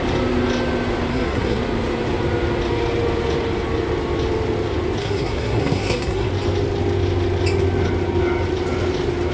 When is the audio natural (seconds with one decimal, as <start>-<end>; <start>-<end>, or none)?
0.0-1.1; 1.6-5.0; 6.3-9.3

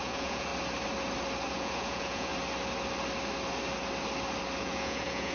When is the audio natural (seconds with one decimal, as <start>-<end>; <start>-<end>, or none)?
0.5-1.5; 2.3-4.6